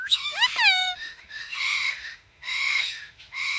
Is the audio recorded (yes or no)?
no